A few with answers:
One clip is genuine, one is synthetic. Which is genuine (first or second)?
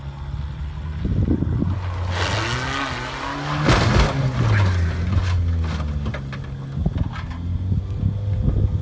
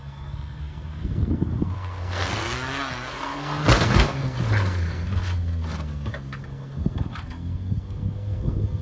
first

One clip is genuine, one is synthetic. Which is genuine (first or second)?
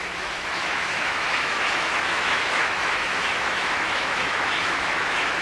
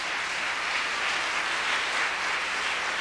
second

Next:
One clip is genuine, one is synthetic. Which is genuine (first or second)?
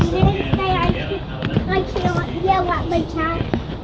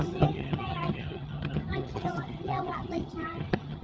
first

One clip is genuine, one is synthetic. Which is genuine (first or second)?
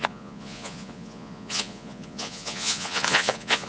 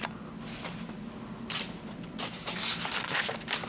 second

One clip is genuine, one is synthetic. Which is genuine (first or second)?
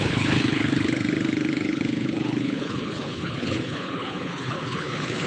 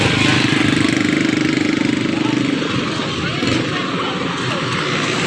second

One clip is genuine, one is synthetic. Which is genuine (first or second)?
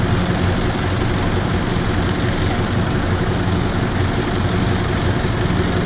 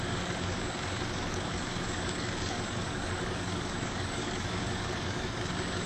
first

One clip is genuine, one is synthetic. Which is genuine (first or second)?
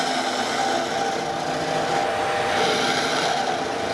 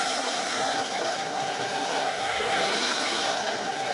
first